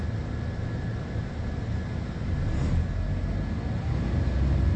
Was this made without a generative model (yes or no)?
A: yes